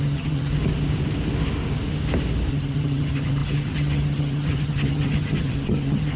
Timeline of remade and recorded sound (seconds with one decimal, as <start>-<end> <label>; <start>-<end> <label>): 0.0-0.5 remade; 0.5-2.5 recorded; 2.5-6.2 remade